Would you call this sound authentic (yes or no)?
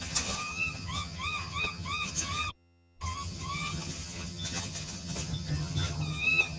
no